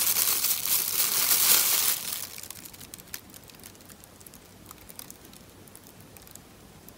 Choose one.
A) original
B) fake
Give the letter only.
A